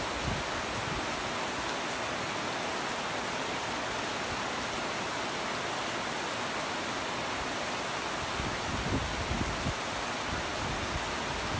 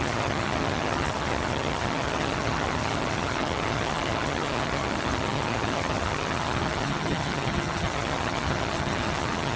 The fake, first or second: second